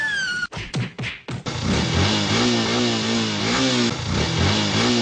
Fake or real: real